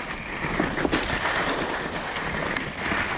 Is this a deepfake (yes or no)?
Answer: no